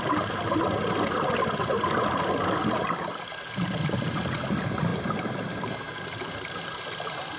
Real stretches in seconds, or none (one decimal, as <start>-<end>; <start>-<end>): 0.0-7.4